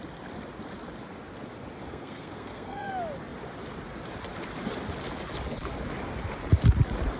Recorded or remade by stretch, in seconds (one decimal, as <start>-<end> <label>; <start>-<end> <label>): 0.0-1.9 recorded; 1.9-2.9 remade; 2.9-7.2 recorded